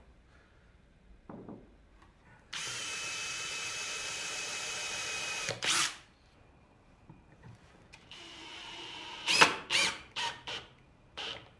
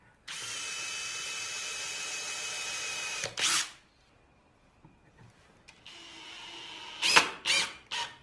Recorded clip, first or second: second